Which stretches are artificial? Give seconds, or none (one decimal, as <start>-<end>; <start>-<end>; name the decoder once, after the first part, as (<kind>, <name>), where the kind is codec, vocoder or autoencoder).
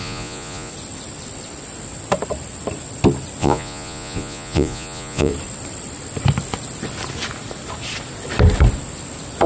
0.0-0.7 (vocoder, Vocos); 3.4-5.3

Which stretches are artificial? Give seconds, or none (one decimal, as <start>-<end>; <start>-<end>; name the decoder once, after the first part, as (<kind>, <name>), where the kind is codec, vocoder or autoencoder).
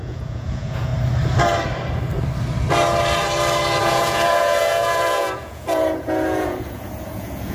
0.0-0.9 (vocoder, Vocos); 3.8-7.5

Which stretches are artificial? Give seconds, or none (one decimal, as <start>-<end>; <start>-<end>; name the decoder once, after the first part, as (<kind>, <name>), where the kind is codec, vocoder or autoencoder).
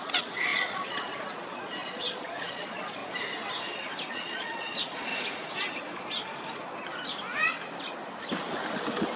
0.0-3.0 (vocoder, Vocos); 4.1-5.1